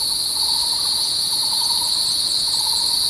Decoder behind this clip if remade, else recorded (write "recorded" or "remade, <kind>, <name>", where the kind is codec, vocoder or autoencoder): recorded